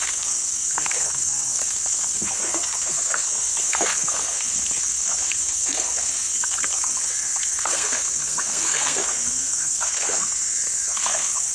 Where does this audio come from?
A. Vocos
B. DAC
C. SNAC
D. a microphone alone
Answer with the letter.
C